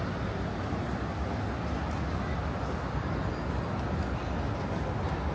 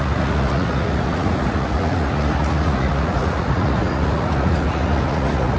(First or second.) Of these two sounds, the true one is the first